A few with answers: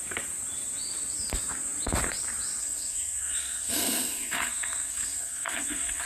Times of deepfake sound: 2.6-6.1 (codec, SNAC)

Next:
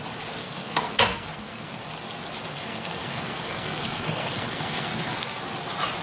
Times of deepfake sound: 0.4-1.8 (codec, SNAC); 2.5-5.4

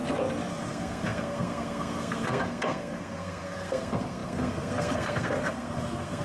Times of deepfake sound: 0.5-6.2 (codec, SNAC)

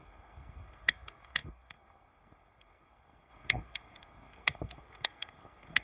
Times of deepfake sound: 0.0-5.8 (codec, SNAC)